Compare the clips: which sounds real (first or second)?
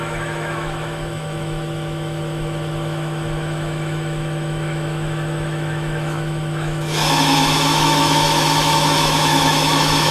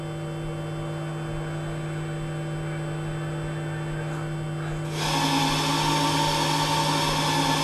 second